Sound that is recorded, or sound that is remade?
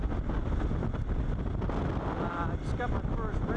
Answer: recorded